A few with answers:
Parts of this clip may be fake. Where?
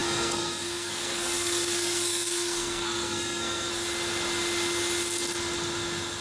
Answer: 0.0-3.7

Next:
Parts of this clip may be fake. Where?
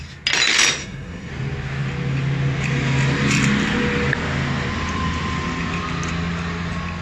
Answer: 0.8-1.3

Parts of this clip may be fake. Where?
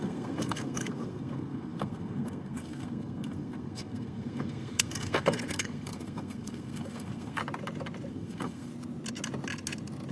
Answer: 0.0-7.4; 8.1-8.7